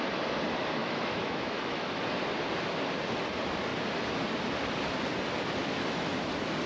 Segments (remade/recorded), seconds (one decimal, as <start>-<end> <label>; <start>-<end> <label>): 0.0-0.8 recorded; 0.8-2.1 remade; 2.1-5.6 recorded; 5.6-6.1 remade; 6.1-6.7 recorded